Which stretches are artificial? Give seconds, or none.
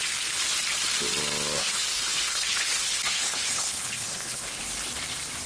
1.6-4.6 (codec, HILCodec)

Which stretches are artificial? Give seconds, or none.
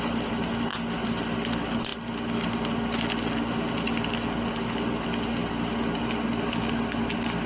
none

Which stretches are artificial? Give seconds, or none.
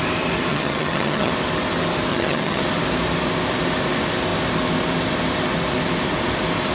0.5-1.3 (vocoder, HiFi-GAN); 2.1-2.6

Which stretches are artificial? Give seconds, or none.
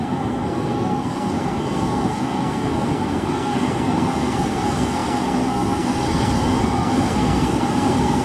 0.0-8.2 (codec, SNAC)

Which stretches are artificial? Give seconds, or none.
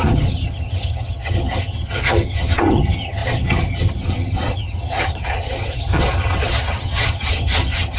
0.0-8.0 (vocoder, HiFi-GAN)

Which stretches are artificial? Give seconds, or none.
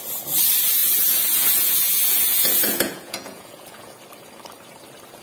0.8-3.9 (vocoder, Vocos)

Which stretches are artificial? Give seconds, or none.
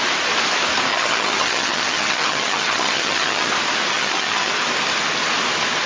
0.9-3.5 (vocoder, HiFi-GAN); 3.9-4.5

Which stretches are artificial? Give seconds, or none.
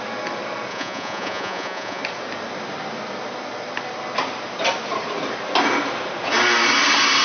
0.7-2.0 (vocoder, Vocos)